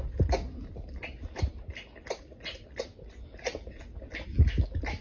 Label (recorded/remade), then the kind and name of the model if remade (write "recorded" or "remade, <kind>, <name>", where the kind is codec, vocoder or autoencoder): recorded